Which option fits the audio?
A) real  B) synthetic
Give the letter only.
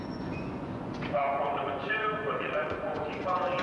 B